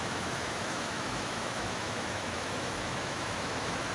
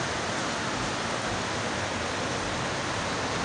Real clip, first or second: second